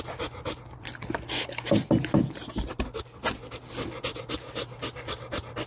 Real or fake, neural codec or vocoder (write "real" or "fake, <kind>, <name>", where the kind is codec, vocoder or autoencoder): real